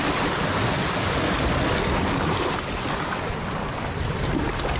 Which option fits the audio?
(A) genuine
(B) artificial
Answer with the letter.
A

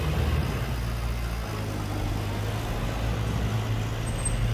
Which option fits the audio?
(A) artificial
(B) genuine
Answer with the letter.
B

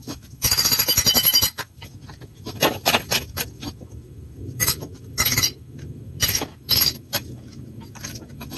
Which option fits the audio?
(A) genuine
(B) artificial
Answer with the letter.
B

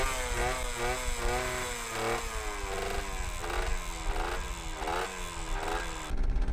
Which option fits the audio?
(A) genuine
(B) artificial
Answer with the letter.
A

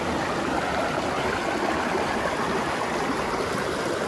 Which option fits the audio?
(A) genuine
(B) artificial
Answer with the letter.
A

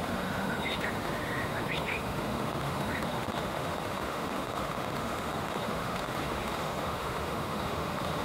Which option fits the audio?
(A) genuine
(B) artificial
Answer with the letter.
B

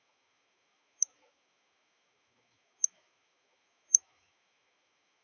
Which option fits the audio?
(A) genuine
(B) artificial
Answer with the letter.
B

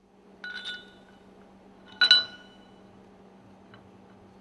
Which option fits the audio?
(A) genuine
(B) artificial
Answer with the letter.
A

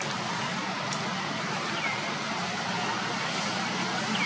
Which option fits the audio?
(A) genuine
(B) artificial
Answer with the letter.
A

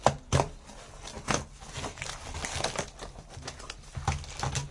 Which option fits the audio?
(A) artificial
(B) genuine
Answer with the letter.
B